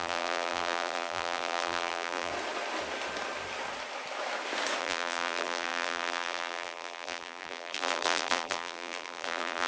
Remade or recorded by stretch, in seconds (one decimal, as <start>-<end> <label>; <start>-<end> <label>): 0.0-2.3 remade; 2.3-4.8 recorded; 4.8-9.7 remade